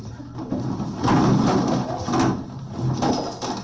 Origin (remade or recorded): recorded